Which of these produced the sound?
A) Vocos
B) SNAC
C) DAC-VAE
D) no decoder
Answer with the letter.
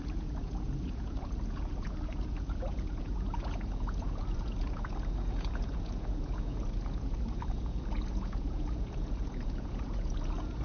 A